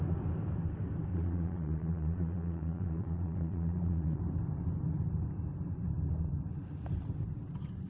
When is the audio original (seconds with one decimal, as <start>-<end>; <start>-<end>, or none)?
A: 0.0-1.1; 4.2-7.9

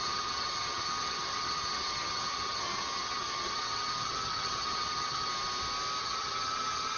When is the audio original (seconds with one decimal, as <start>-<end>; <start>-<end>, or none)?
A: 5.3-6.0

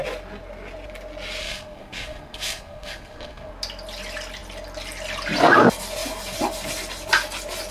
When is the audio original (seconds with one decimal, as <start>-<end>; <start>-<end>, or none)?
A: 0.0-1.4; 3.5-7.7

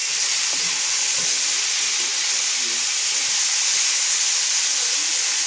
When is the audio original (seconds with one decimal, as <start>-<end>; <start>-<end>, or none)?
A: 0.6-2.1; 3.5-5.5

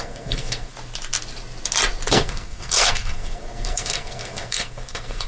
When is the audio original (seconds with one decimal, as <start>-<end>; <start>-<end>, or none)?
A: 0.7-2.1

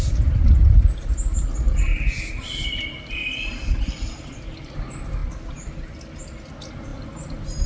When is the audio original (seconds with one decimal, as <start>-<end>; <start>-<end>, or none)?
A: 0.0-1.9; 4.3-7.7

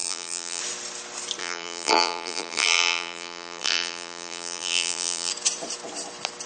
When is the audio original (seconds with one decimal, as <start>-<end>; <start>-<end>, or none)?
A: 0.6-1.4; 5.3-6.5